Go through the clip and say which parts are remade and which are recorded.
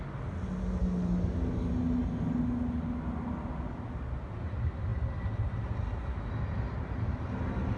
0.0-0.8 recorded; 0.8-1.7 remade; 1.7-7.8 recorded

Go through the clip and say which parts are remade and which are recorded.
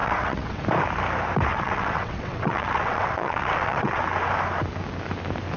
0.0-0.6 remade; 0.6-1.5 recorded; 1.5-4.0 remade; 4.0-5.6 recorded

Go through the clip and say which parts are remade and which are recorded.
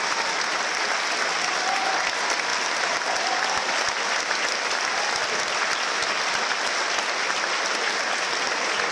0.0-8.9 recorded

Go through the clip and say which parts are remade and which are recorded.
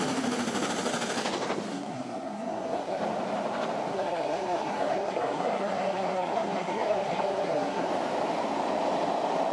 0.0-1.7 recorded; 1.7-3.0 remade; 3.0-3.9 recorded; 3.9-7.9 remade; 7.9-9.5 recorded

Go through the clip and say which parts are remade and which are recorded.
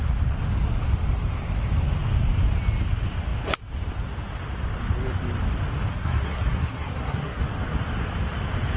0.0-5.9 recorded; 5.9-7.4 remade; 7.4-8.8 recorded